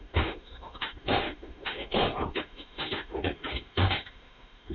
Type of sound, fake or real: fake